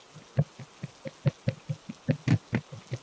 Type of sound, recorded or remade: recorded